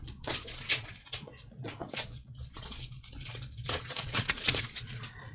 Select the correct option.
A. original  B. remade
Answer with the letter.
B